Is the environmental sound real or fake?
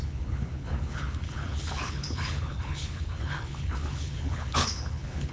fake